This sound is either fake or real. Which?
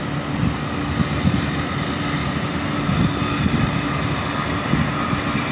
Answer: real